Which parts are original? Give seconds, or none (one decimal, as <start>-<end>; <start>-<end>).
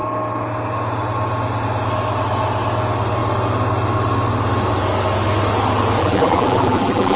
0.0-6.0